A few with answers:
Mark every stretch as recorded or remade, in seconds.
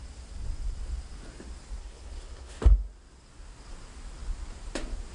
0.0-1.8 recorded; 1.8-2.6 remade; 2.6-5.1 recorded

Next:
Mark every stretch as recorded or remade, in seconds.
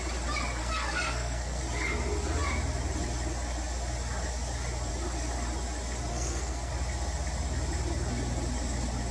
0.0-0.6 recorded; 0.6-1.6 remade; 1.6-6.1 recorded; 6.1-6.7 remade; 6.7-9.1 recorded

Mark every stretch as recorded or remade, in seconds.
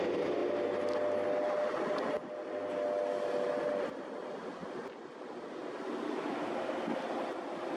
0.0-0.4 remade; 0.4-4.0 recorded; 4.0-4.6 remade; 4.6-7.8 recorded